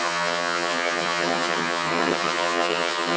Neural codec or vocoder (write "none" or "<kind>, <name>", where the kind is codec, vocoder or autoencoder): vocoder, HiFi-GAN